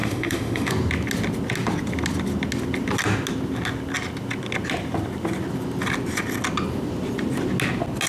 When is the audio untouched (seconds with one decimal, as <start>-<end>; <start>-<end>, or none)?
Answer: 0.7-8.1